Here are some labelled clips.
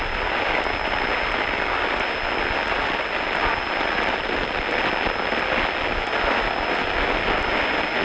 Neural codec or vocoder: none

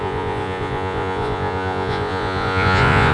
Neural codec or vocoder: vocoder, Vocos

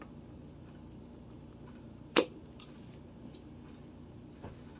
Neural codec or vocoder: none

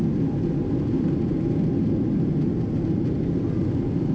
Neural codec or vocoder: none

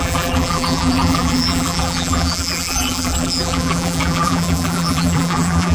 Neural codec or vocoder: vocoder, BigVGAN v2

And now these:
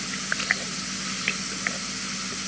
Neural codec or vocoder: none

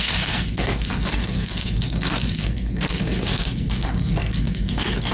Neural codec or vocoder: codec, SNAC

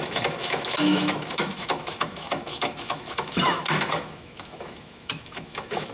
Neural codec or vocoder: autoencoder, DAC-VAE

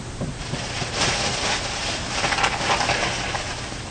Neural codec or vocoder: none